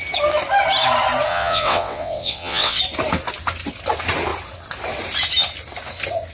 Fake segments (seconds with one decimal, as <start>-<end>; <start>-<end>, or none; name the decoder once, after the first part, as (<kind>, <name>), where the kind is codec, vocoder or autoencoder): 1.3-2.8 (vocoder, WaveNeXt)